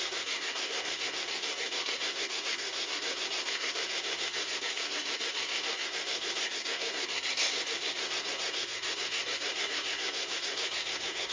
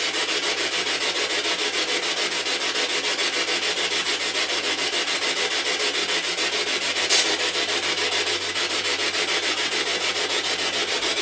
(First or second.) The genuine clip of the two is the second